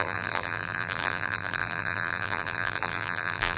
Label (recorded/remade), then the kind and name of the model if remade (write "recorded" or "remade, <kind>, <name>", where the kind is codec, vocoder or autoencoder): remade, vocoder, BigVGAN v2